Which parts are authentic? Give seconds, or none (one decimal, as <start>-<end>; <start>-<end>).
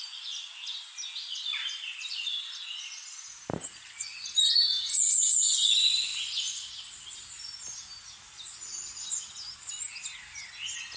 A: 0.0-11.0